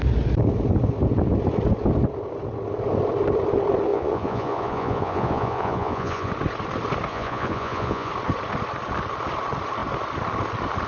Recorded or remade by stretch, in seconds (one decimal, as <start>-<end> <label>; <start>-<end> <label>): 0.0-3.9 recorded; 3.9-6.3 remade; 6.3-7.1 recorded; 7.1-8.1 remade; 8.1-10.9 recorded